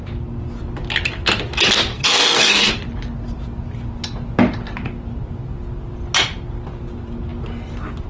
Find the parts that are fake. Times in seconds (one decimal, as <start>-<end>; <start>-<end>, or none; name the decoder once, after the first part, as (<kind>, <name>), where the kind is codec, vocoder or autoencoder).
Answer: 1.9-2.7 (codec, SNAC)

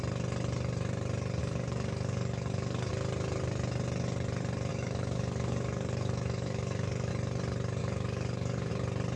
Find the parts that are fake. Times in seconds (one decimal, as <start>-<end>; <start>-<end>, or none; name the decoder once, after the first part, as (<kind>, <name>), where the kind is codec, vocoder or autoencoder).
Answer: 1.4-2.9 (codec, DAC); 4.7-7.1; 7.8-8.7

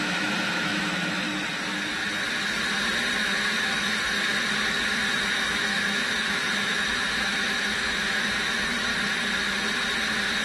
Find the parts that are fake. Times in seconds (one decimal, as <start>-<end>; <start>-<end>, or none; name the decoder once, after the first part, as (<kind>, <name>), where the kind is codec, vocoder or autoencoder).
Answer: 0.0-2.0 (autoencoder, DAC-VAE); 3.2-4.3; 5.1-8.9